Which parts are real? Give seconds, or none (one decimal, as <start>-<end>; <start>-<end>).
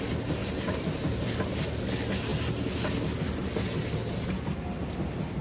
0.0-5.4